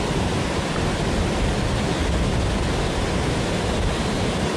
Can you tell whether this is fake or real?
real